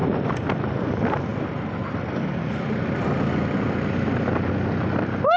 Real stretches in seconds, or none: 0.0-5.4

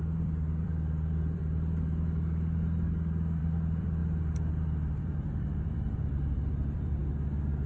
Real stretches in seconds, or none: 1.4-3.4; 4.0-4.5; 7.0-7.7

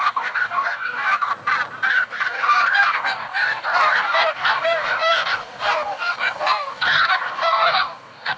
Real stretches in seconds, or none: 1.3-1.9

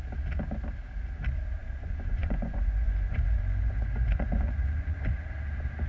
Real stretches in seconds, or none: 0.0-1.6; 5.1-5.9